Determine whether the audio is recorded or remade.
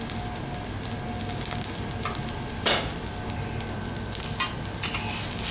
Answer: recorded